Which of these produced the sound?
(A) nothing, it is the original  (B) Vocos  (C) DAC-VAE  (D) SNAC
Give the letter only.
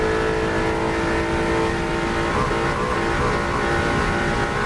A